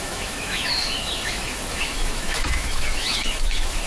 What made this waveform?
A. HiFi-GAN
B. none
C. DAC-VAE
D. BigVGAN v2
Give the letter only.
C